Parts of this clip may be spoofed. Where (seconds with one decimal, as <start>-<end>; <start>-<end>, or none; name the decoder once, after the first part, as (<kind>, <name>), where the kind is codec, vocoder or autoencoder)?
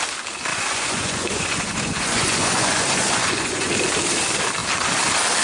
0.5-3.7 (vocoder, Vocos)